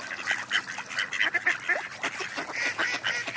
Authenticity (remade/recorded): recorded